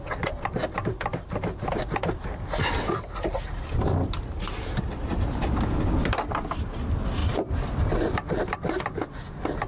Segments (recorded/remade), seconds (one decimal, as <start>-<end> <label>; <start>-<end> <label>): 0.0-9.7 recorded